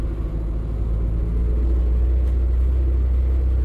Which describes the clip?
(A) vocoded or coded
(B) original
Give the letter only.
B